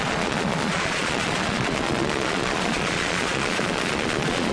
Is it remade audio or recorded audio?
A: remade